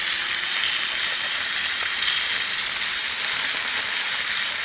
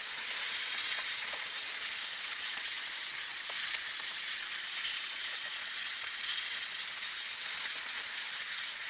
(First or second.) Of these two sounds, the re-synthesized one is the second